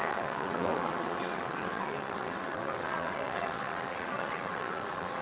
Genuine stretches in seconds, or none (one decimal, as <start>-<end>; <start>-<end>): none